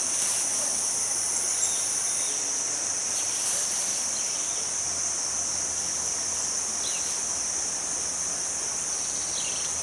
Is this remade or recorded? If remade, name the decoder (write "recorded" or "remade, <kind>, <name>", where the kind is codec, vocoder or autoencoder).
remade, vocoder, BigVGAN v2